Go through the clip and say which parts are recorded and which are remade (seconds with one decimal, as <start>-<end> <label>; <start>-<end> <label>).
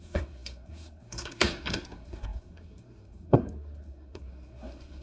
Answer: 0.0-5.0 remade